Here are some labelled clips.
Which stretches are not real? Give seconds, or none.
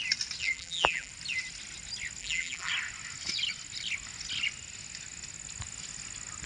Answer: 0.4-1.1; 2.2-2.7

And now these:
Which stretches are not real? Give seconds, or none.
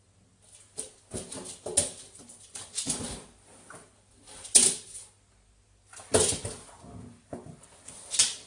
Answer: none